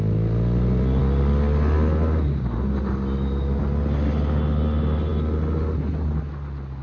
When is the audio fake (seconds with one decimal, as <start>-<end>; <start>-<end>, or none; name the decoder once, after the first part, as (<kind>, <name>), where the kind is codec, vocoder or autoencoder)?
none